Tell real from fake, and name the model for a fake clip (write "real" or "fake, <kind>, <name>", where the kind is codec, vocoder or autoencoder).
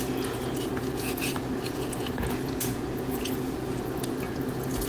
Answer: fake, vocoder, Vocos